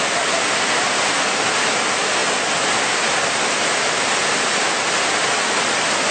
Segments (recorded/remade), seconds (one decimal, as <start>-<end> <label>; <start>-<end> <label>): 0.0-6.1 recorded